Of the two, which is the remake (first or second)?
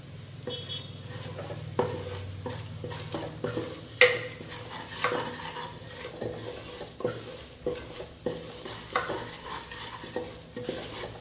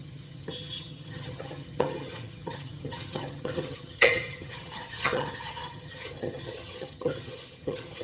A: second